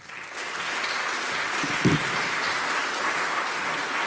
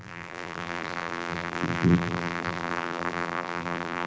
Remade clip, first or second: second